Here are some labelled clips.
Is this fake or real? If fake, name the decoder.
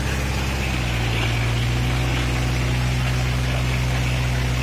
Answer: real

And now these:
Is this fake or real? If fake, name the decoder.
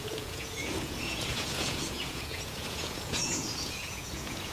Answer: fake, vocoder, Vocos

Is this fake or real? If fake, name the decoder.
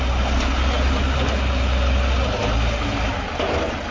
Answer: real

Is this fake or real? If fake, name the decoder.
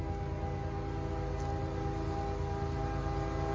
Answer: real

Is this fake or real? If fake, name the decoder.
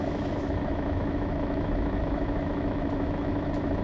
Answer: fake, autoencoder, DAC-VAE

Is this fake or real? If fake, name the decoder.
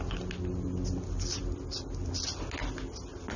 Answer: real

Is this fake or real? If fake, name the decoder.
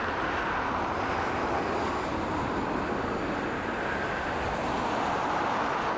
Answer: real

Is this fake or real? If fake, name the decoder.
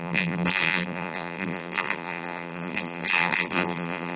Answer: fake, vocoder, BigVGAN v2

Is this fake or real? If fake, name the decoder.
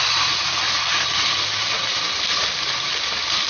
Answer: real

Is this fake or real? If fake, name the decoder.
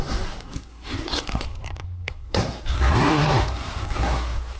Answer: fake, codec, SNAC